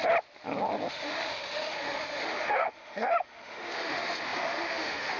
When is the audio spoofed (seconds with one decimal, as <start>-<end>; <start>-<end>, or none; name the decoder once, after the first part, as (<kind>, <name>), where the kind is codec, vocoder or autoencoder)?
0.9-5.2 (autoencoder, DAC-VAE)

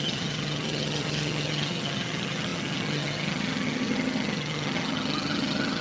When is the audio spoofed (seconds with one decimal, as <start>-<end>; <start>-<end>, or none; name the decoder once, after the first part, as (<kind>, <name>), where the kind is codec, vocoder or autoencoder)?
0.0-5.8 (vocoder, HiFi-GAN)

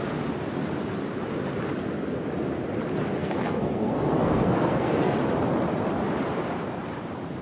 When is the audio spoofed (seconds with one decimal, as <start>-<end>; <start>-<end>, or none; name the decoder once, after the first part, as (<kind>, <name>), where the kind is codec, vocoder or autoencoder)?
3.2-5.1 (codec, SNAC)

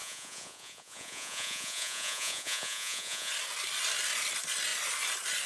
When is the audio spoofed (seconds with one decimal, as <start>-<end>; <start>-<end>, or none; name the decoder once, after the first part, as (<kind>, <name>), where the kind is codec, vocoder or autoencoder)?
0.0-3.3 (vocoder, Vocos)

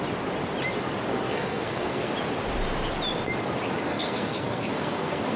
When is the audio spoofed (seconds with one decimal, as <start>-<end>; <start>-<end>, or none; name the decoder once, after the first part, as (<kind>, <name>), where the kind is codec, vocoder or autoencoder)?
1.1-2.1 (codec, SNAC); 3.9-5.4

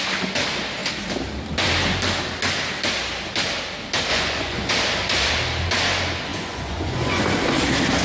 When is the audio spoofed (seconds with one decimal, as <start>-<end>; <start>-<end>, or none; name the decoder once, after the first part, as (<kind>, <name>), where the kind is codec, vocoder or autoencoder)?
4.1-4.7 (vocoder, Vocos); 6.3-7.2

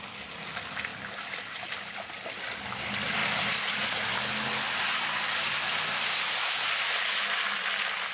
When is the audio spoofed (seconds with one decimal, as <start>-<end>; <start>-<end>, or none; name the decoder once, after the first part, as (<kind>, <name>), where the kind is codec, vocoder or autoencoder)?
none

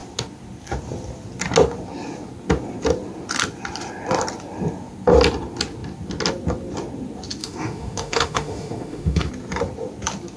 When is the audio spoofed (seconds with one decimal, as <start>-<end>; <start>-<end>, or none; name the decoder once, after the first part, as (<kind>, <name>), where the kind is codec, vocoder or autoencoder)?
7.4-9.3 (autoencoder, DAC-VAE)